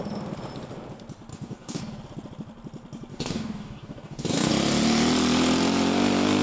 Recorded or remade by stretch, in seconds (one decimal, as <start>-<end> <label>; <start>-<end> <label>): 0.0-1.3 recorded; 1.3-1.8 remade; 1.8-3.1 recorded; 3.1-4.5 remade; 4.5-6.4 recorded